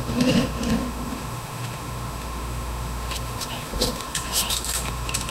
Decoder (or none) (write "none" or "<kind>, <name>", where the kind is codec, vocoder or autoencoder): autoencoder, DAC-VAE